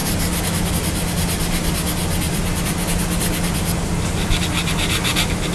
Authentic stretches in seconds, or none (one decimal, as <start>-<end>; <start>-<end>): 0.0-5.5